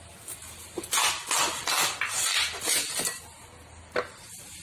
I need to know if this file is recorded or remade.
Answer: recorded